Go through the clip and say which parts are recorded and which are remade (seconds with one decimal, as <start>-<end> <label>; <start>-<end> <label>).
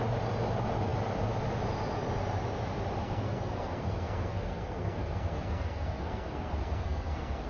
0.0-3.0 recorded; 3.0-7.5 remade